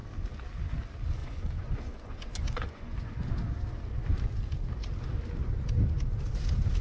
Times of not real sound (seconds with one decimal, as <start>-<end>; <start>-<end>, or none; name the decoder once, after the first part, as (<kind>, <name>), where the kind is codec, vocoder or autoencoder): 1.2-3.3 (vocoder, Vocos)